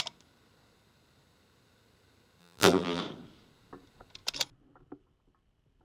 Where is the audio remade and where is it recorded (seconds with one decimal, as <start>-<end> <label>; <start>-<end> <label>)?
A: 0.0-2.4 recorded; 2.4-3.0 remade; 3.0-5.8 recorded